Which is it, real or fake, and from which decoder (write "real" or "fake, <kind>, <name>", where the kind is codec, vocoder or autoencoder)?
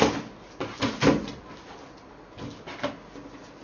real